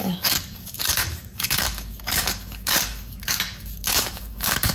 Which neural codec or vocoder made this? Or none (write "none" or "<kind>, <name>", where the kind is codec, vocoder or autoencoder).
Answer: codec, DAC